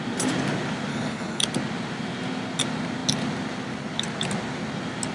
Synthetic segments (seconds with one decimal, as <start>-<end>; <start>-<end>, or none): 0.9-1.4